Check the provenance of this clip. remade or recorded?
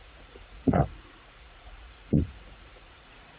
remade